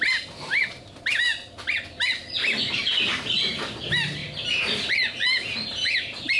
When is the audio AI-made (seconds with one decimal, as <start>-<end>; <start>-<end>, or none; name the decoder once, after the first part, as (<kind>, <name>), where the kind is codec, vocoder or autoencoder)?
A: none